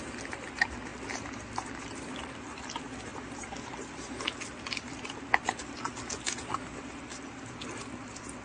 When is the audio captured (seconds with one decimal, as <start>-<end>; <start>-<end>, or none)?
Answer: 0.0-8.4